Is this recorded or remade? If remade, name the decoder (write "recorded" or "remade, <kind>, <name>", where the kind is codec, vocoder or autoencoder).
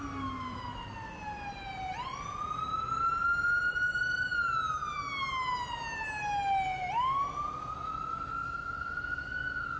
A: recorded